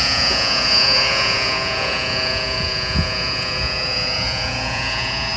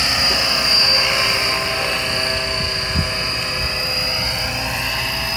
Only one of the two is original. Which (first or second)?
second